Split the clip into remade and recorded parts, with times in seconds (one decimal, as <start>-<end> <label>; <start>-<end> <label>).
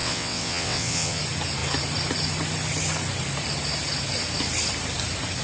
0.0-1.2 remade; 1.2-5.4 recorded